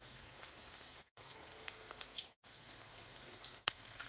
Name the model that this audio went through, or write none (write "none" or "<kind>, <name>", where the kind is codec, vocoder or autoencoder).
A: codec, SNAC